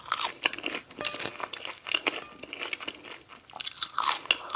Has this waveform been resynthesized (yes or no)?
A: no